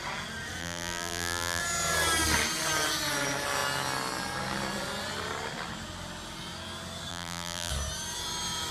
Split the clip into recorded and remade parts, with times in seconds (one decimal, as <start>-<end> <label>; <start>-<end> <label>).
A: 0.0-0.6 recorded; 0.6-1.6 remade; 1.6-7.1 recorded; 7.1-7.7 remade; 7.7-8.7 recorded